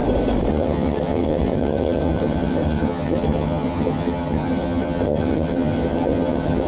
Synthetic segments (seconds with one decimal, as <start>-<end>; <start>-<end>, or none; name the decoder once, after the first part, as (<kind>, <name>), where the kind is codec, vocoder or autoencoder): 0.5-6.7 (vocoder, HiFi-GAN)